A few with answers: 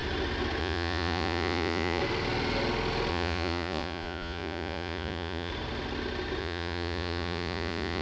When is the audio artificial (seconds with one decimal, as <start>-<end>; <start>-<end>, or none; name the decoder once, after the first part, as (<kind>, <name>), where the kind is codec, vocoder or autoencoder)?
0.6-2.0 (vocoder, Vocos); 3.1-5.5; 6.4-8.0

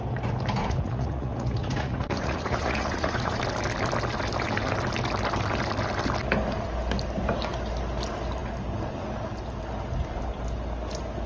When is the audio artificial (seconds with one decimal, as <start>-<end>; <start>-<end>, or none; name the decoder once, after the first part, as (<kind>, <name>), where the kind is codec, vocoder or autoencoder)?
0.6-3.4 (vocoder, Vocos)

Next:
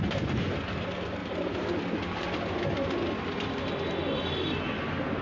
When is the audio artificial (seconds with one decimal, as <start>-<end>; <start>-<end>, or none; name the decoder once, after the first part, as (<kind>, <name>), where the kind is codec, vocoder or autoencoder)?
none

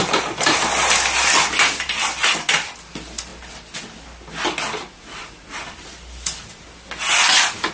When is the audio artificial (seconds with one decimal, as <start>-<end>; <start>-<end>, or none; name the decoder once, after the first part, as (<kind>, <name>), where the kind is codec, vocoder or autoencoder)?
none

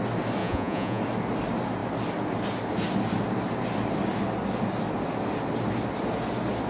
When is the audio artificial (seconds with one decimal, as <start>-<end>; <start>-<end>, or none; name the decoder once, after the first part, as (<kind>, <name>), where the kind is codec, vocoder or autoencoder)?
0.4-1.0 (vocoder, Vocos)